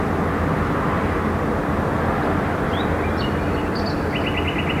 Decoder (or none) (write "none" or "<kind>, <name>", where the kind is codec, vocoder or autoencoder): none